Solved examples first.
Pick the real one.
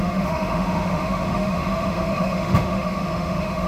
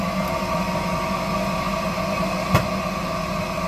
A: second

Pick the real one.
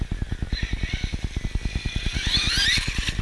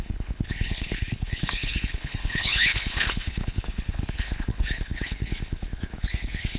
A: first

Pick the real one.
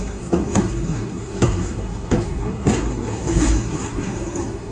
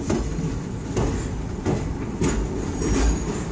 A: second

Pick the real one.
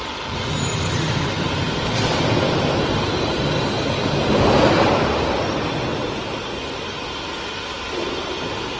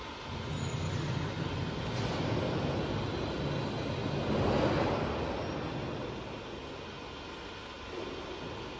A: second